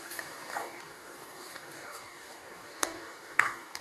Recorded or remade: remade